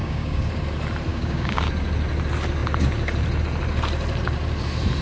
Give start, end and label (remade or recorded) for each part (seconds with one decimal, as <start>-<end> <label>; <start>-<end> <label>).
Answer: 0.0-0.5 remade; 0.5-1.1 recorded; 1.1-1.7 remade; 1.7-5.0 recorded

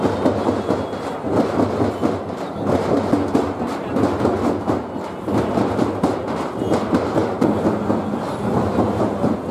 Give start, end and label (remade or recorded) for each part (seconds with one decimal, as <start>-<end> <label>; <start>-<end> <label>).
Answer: 0.0-9.5 recorded

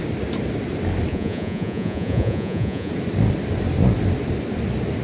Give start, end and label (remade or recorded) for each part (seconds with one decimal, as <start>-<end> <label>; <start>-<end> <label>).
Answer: 0.0-1.1 recorded; 1.1-2.9 remade; 2.9-5.0 recorded

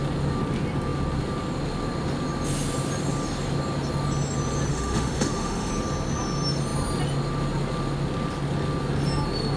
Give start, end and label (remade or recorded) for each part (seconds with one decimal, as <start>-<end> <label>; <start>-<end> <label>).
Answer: 0.0-4.7 recorded; 4.7-5.7 remade; 5.7-9.6 recorded

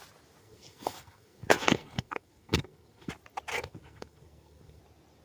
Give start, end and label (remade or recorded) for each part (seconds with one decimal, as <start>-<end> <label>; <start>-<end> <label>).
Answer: 0.0-0.4 recorded; 0.4-3.1 remade; 3.1-3.5 recorded; 3.5-4.8 remade; 4.8-5.2 recorded